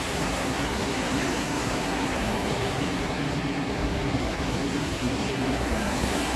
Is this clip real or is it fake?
fake